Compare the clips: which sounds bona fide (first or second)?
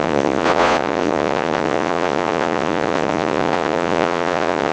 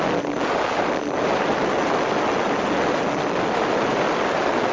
second